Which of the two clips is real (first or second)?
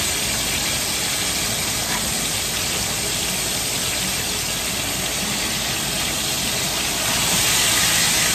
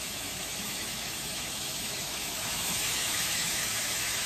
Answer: first